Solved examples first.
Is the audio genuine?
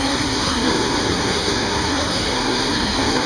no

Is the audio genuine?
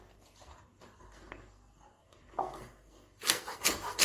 no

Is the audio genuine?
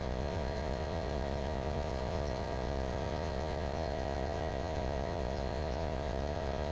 no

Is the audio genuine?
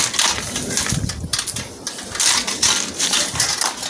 yes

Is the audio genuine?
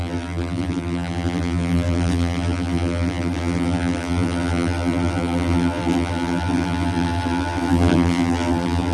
no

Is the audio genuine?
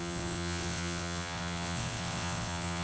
no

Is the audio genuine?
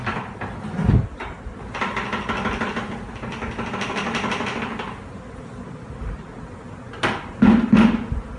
yes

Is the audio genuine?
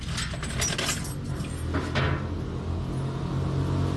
yes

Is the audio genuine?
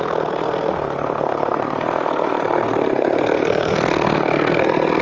no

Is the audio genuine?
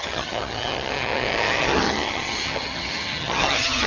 no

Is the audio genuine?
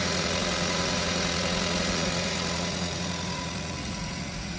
no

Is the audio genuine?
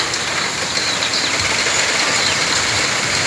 yes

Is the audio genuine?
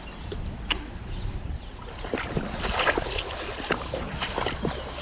yes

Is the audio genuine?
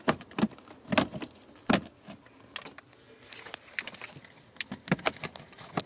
yes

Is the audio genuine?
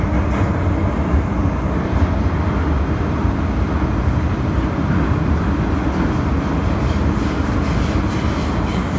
yes